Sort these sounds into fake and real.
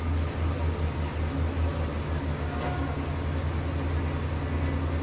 real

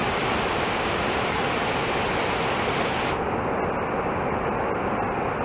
real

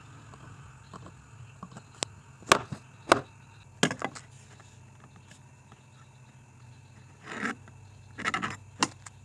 real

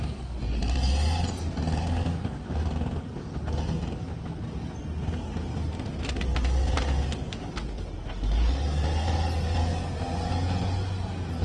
real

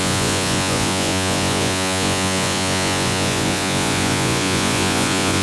fake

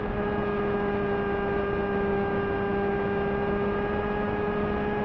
real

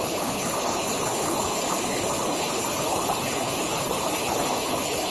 fake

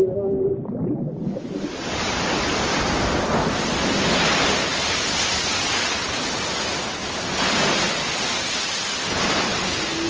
real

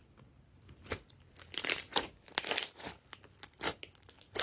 real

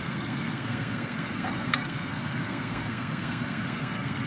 fake